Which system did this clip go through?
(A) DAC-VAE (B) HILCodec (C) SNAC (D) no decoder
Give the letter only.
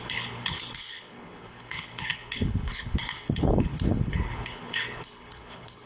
B